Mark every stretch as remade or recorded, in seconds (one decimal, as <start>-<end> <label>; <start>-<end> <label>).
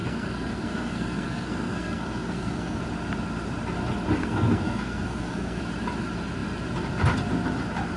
0.0-2.8 remade; 2.8-4.2 recorded; 4.2-5.6 remade; 5.6-8.0 recorded